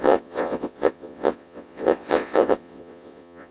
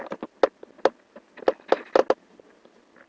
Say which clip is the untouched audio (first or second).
second